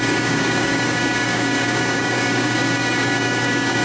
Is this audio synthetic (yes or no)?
yes